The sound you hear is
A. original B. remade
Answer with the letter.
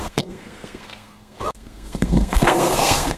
B